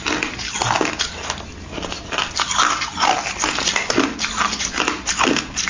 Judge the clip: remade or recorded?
recorded